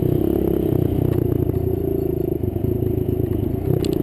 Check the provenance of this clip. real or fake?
real